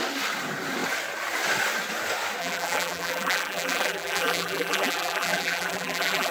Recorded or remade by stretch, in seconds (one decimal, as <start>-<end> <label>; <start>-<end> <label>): 0.0-2.4 recorded; 2.4-6.3 remade